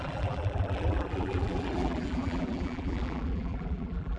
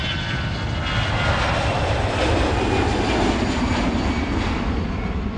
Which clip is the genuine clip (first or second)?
second